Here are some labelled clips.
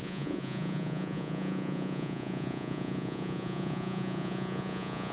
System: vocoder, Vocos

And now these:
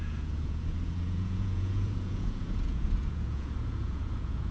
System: vocoder, Vocos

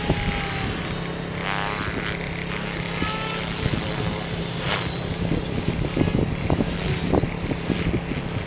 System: none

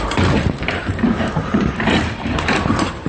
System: vocoder, BigVGAN v2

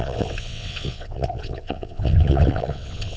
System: vocoder, WaveNeXt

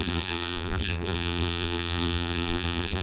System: vocoder, BigVGAN v2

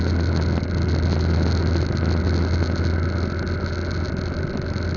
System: none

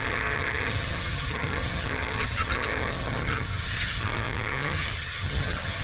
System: vocoder, HiFi-GAN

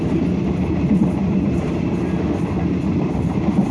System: none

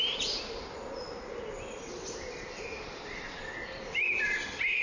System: none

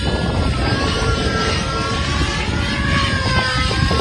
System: vocoder, BigVGAN v2